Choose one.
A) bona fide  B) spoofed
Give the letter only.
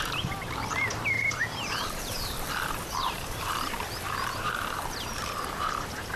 B